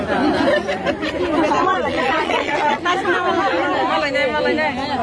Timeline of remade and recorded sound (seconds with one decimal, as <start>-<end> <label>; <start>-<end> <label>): 0.0-1.6 recorded; 1.6-2.8 remade; 2.8-5.0 recorded